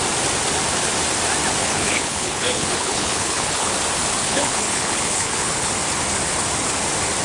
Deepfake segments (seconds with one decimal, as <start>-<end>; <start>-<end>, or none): 1.6-3.7; 4.2-5.7